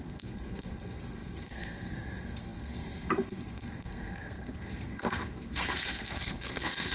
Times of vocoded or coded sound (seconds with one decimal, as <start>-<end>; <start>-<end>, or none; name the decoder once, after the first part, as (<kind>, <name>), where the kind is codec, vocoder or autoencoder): 0.0-6.9 (codec, SNAC)